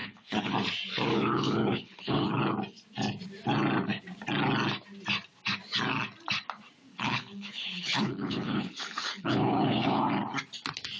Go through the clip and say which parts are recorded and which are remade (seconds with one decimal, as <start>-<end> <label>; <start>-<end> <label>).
0.0-0.5 remade; 0.5-1.1 recorded; 1.1-2.4 remade; 2.4-6.9 recorded; 6.9-10.1 remade; 10.1-11.0 recorded

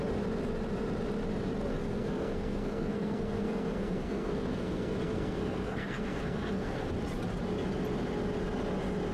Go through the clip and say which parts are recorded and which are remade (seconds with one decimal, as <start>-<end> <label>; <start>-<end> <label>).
0.0-1.7 recorded; 1.7-6.9 remade; 6.9-9.1 recorded

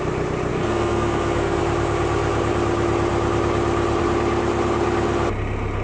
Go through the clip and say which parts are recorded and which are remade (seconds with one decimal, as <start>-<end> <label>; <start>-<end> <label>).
0.0-0.5 recorded; 0.5-1.6 remade; 1.6-5.8 recorded

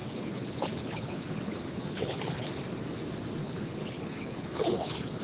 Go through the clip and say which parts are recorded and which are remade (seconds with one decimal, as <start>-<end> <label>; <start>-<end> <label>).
0.0-2.6 remade; 2.6-3.4 recorded; 3.4-5.2 remade